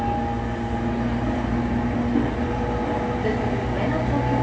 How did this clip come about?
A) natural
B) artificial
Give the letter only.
A